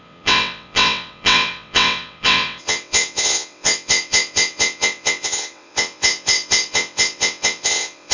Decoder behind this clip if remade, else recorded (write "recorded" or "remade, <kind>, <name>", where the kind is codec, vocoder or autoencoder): remade, vocoder, WaveNeXt